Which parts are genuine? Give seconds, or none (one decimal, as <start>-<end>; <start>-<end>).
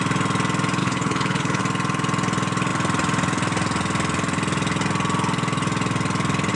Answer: 0.0-0.8; 1.6-6.5